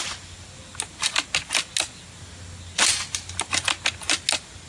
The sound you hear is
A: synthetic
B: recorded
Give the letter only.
B